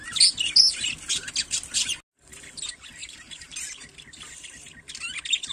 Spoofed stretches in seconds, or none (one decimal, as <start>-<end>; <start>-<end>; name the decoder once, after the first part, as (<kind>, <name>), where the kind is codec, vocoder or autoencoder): 3.0-3.5 (vocoder, BigVGAN v2)